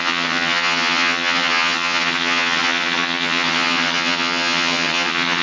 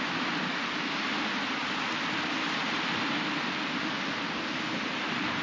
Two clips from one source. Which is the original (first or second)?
second